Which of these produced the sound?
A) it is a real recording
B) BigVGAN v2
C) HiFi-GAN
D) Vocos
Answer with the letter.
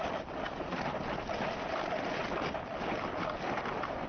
A